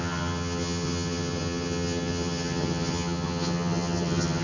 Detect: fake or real fake